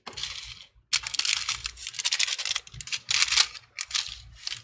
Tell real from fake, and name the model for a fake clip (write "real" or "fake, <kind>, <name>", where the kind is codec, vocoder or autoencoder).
real